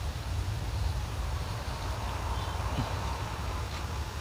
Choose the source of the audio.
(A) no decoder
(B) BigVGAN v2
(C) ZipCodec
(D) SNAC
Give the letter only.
B